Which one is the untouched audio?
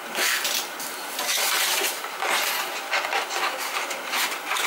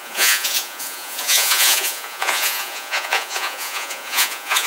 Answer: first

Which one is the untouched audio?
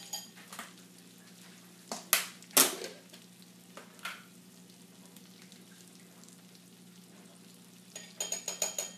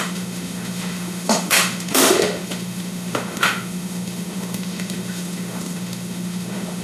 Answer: first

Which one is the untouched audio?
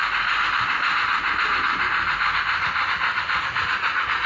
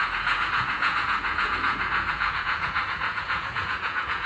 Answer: first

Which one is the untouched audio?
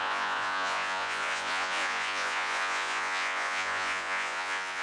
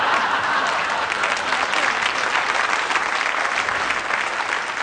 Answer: second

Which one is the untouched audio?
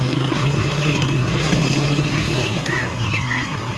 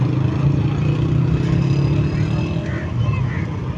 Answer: second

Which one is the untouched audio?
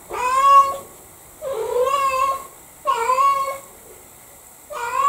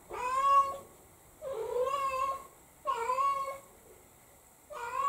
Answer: first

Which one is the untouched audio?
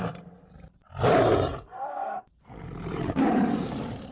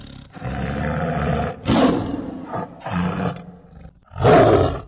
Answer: second